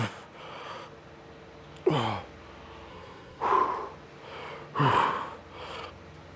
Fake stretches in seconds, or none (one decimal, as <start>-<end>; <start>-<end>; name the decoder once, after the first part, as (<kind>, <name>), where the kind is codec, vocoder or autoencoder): 2.9-3.4 (codec, SNAC)